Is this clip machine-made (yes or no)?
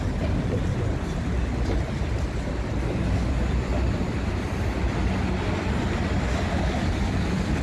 no